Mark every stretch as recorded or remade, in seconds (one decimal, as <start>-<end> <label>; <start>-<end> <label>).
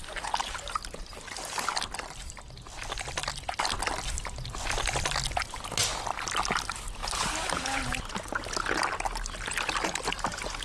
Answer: 0.0-10.6 recorded